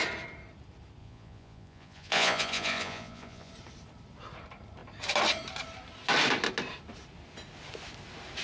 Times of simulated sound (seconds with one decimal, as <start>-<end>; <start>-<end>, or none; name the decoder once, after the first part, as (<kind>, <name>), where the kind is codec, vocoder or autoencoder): 1.0-3.5 (vocoder, Vocos)

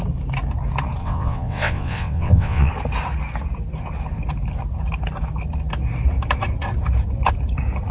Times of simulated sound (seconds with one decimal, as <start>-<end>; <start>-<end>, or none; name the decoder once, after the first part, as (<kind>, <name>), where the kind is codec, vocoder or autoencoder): 1.0-2.7 (vocoder, WaveNeXt)